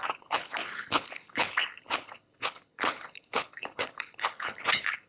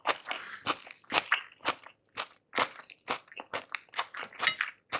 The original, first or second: second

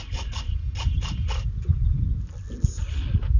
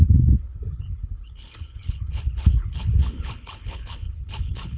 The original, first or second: first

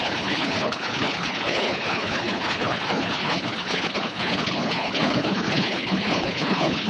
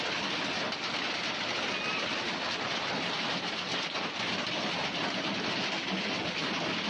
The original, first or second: second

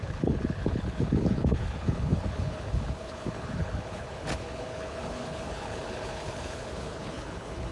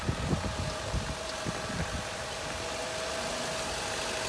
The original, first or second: second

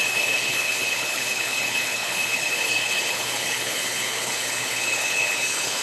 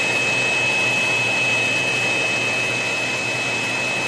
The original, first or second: second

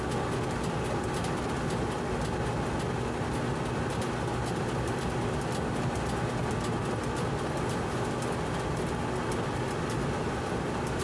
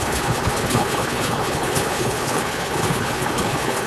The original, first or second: first